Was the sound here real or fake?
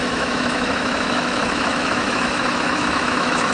fake